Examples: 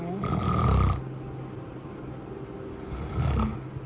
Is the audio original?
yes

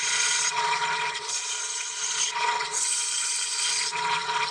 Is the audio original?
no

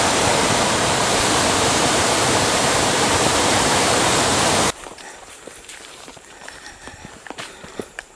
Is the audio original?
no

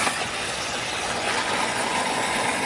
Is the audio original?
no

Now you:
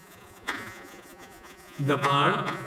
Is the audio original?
no